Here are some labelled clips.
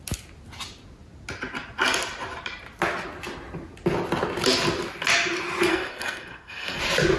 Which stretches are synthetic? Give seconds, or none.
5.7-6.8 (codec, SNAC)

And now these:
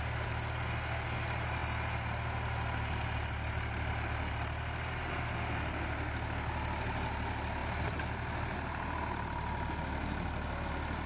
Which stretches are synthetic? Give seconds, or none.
none

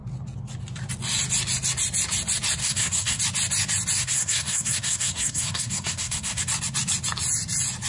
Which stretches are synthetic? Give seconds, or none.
2.6-3.2 (codec, SNAC); 4.0-6.4

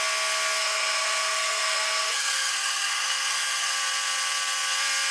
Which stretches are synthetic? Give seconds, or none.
0.6-3.7 (codec, SNAC)

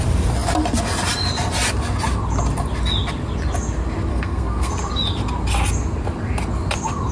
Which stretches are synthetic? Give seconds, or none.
4.1-4.7 (codec, SNAC)